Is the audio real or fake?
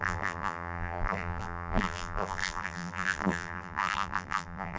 fake